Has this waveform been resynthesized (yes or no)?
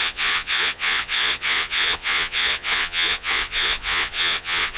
yes